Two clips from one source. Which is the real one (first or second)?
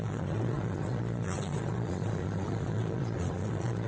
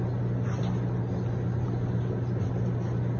second